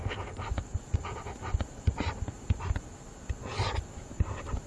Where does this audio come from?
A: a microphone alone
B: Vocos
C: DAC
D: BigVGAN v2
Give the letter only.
A